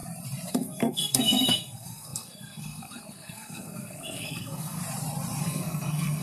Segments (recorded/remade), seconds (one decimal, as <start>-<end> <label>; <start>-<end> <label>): 0.0-0.5 recorded; 0.5-4.8 remade; 4.8-5.4 recorded; 5.4-6.2 remade